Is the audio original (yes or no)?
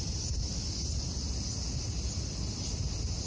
yes